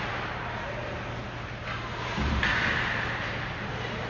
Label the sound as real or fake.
real